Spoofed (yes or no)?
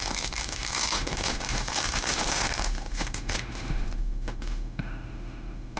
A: yes